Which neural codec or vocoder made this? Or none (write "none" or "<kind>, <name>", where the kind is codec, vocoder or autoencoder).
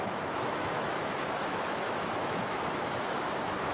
autoencoder, DAC-VAE